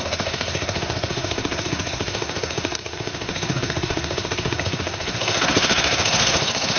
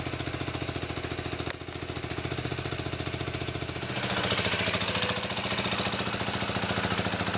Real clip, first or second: second